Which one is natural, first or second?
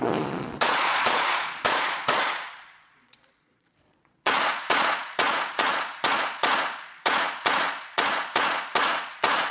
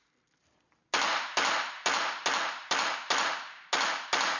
second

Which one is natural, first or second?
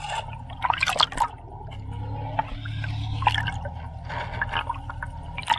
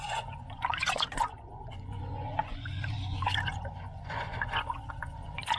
first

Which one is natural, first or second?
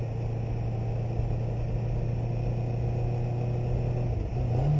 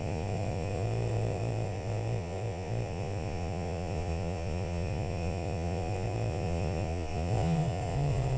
first